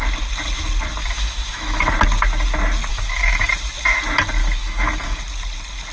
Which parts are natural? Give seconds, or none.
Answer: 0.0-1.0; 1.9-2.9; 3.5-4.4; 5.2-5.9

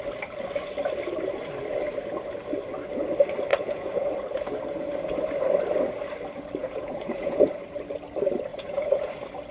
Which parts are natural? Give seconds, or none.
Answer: 0.0-3.5; 4.1-6.6; 7.5-8.5; 9.1-9.5

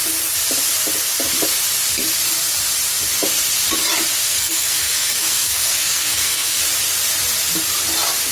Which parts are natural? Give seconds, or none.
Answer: 0.0-4.2; 6.6-8.3